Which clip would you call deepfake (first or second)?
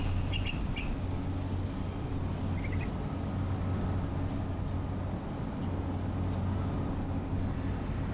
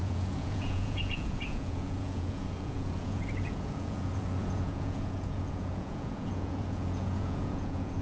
second